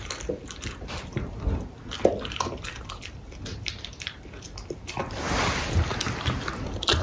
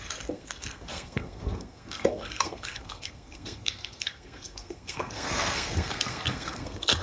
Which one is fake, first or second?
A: second